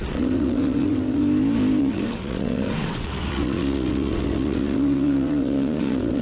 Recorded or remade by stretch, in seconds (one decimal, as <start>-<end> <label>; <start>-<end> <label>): 0.0-1.2 remade; 1.2-1.8 recorded; 1.8-6.2 remade